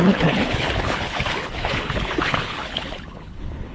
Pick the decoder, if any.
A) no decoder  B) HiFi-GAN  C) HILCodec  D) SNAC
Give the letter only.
C